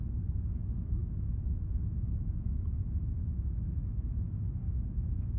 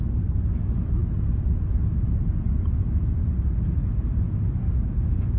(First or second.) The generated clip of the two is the first